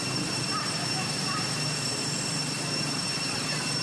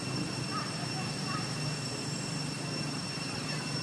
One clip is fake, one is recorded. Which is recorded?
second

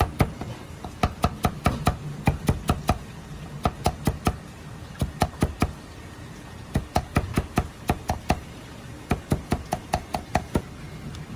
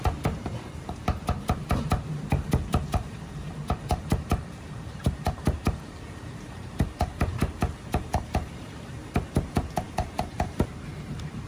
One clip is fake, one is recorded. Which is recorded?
first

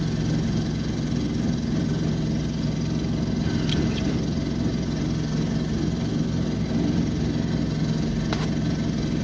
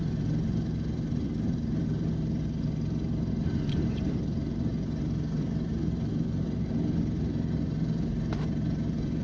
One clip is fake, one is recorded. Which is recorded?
first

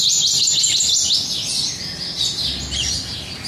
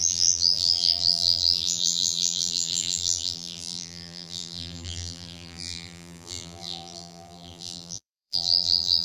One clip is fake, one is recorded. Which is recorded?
first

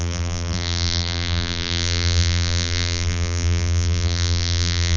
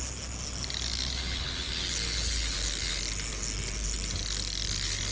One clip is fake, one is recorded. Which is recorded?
second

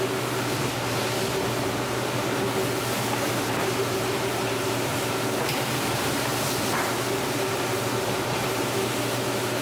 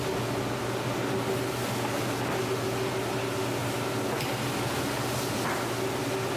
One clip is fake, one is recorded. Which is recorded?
second